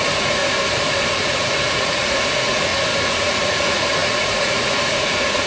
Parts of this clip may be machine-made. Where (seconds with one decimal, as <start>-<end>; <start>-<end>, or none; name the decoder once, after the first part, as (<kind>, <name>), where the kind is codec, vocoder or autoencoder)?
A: 0.0-0.4 (vocoder, Vocos); 1.2-2.7; 3.2-5.5